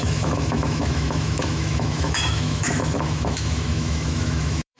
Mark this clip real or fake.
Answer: fake